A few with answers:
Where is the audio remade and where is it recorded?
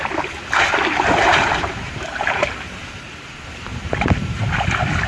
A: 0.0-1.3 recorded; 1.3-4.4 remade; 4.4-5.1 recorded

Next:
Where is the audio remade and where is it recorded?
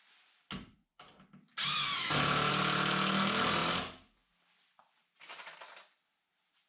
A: 0.0-6.7 recorded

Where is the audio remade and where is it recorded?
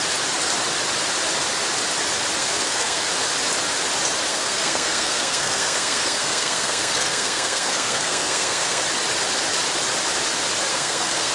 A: 0.0-2.4 recorded; 2.4-3.1 remade; 3.1-4.3 recorded; 4.3-8.8 remade; 8.8-10.7 recorded; 10.7-11.3 remade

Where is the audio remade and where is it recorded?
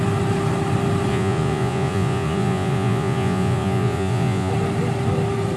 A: 0.0-1.1 recorded; 1.1-4.5 remade; 4.5-5.6 recorded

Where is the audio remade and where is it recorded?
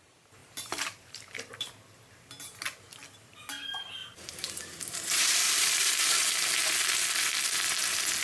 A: 0.0-0.4 recorded; 0.4-2.3 remade; 2.3-4.0 recorded; 4.0-6.2 remade; 6.2-8.2 recorded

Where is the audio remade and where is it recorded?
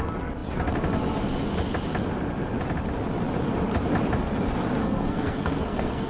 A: 0.0-4.8 recorded; 4.8-6.1 remade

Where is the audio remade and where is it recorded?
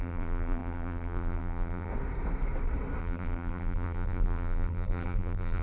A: 0.0-1.9 remade; 1.9-3.0 recorded; 3.0-5.6 remade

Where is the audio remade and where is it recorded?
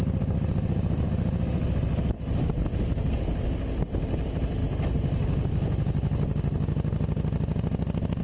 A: 0.0-8.2 recorded